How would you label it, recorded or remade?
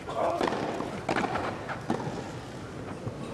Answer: recorded